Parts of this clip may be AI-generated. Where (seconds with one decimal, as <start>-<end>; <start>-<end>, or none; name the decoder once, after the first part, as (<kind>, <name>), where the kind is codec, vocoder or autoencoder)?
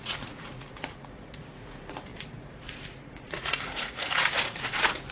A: 0.0-5.1 (vocoder, Vocos)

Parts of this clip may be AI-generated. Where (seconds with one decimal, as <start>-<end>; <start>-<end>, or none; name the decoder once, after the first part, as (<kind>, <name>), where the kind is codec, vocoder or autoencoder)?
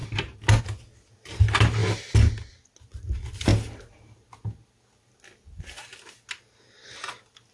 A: none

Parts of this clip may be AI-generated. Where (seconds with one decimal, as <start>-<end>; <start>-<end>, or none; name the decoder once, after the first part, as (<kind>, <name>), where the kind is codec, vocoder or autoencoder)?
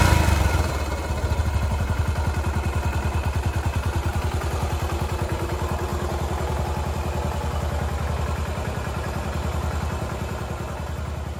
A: 1.4-2.0 (vocoder, BigVGAN v2); 3.2-4.2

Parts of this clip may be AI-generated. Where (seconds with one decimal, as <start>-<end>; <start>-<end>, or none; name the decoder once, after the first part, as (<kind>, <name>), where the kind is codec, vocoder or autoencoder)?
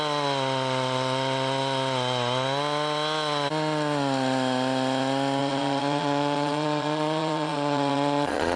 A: 5.4-8.6 (vocoder, Vocos)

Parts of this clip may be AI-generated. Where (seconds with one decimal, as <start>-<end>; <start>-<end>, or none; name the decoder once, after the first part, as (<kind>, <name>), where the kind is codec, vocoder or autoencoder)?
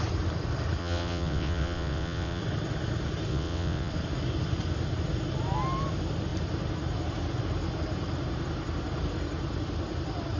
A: 0.8-2.4 (vocoder, WaveNeXt); 3.3-3.9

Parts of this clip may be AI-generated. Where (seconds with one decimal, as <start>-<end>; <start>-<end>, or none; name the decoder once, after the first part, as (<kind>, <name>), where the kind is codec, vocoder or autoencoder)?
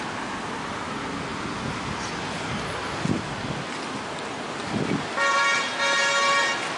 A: none